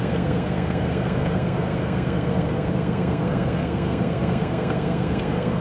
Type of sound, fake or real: fake